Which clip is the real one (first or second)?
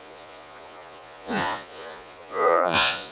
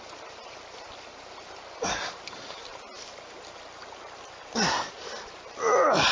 second